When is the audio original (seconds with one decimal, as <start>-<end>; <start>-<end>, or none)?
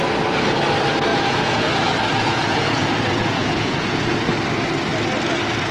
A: 0.0-1.1; 1.7-2.1; 4.1-5.7